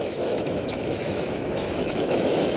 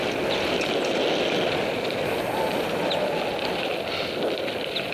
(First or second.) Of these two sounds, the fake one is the first